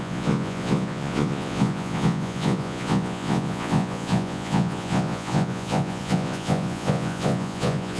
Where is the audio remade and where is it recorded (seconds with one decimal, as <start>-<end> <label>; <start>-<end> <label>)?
0.0-8.0 remade